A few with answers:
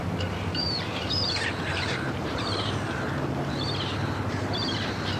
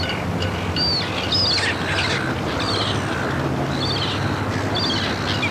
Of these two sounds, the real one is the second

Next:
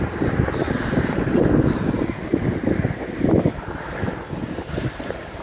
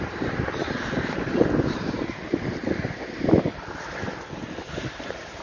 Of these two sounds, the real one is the first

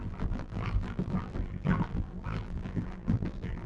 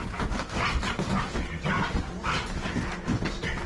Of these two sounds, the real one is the second